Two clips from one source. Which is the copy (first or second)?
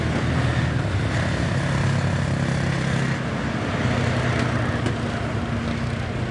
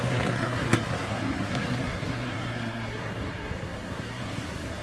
second